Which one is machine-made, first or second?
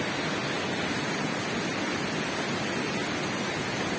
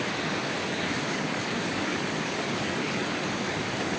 second